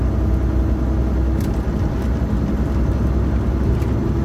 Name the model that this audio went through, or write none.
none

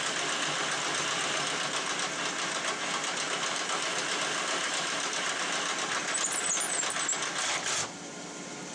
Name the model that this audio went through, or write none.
none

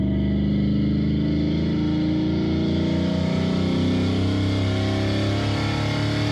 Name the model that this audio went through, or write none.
none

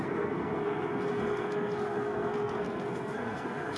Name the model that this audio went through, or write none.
codec, SNAC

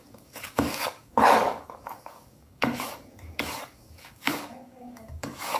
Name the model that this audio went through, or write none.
codec, DAC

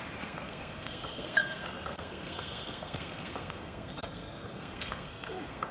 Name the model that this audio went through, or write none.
codec, SNAC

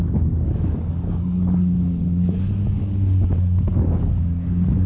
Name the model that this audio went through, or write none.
codec, DAC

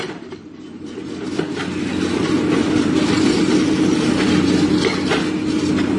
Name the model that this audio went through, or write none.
none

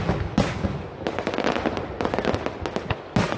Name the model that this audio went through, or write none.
none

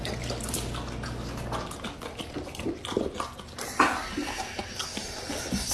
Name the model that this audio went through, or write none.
none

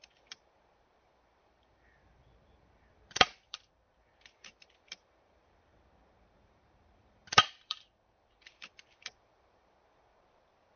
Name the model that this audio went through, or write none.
vocoder, BigVGAN v2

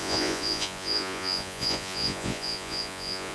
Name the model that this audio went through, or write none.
vocoder, Vocos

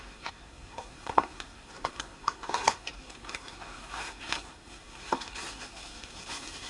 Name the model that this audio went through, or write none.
codec, SNAC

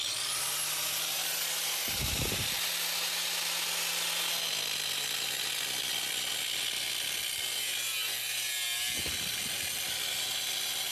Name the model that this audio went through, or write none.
none